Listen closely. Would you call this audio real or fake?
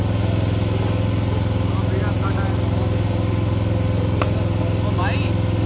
real